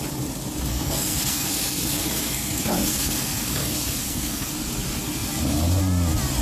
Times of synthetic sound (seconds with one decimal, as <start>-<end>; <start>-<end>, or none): 0.7-4.5